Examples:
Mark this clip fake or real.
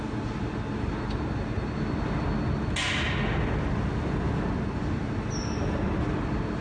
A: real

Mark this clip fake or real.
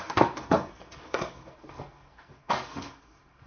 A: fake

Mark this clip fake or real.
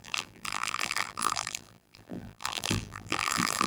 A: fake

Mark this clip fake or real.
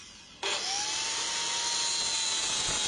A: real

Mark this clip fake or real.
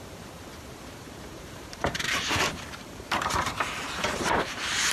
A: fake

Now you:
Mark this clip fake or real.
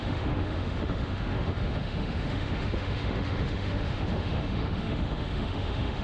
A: fake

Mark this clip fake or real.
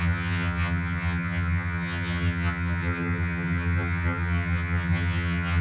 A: fake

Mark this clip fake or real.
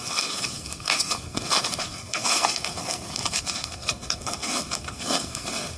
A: fake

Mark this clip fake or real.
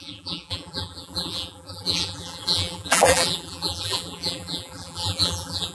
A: fake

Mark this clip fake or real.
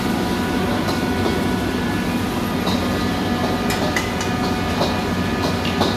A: real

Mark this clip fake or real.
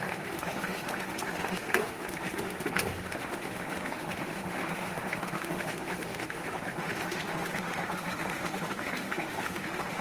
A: fake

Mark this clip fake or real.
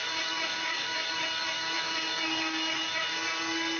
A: fake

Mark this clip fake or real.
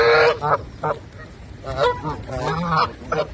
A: real